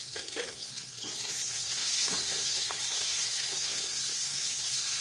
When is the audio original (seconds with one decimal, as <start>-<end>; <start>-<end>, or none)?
none